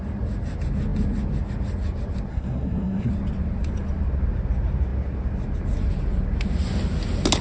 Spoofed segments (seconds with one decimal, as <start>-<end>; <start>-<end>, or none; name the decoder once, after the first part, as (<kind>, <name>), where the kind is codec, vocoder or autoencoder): 2.3-3.1 (codec, SNAC)

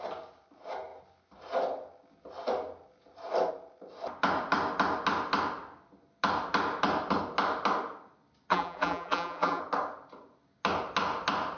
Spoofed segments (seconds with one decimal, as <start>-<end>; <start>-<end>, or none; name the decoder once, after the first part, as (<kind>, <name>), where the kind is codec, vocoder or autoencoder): 8.5-9.6 (vocoder, BigVGAN v2)

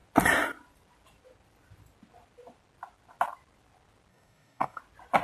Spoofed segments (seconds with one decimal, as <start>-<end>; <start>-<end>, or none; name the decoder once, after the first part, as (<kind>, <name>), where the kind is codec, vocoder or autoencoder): 4.1-4.8 (codec, DAC)